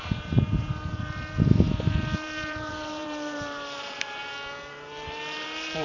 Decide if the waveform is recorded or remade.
remade